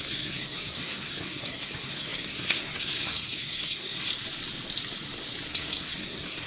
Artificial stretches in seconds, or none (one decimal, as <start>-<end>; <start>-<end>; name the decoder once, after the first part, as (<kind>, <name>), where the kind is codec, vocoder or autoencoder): 0.0-4.1 (codec, SNAC); 5.5-6.5